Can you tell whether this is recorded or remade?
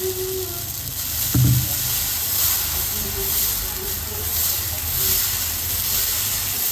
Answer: recorded